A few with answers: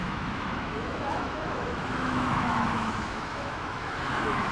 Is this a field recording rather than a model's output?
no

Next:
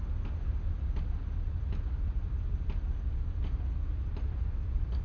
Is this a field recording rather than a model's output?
yes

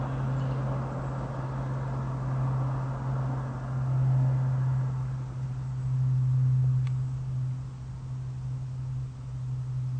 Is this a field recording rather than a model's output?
yes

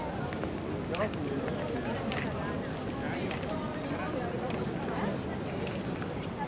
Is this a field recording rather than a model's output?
yes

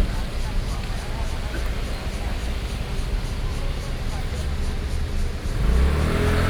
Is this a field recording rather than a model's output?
yes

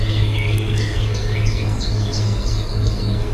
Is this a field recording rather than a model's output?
no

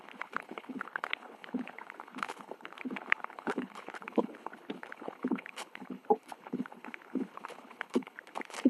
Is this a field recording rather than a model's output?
no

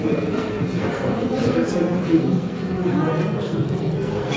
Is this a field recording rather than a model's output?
no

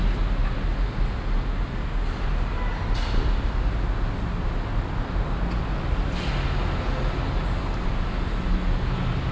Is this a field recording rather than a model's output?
yes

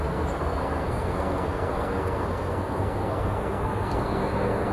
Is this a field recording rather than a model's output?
no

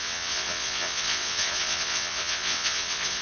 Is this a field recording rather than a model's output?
no